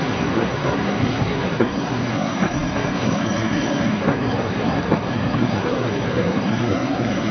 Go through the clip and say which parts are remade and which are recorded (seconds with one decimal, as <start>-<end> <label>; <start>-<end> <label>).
0.0-7.3 remade